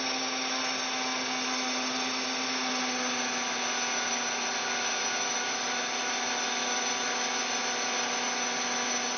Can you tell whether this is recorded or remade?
recorded